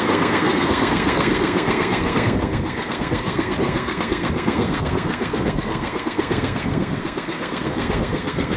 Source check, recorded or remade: remade